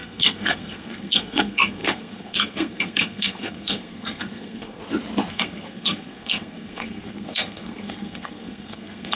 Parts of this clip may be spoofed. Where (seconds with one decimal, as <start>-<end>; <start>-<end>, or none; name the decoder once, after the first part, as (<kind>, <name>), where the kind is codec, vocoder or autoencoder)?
0.0-4.8 (codec, SNAC); 5.3-9.2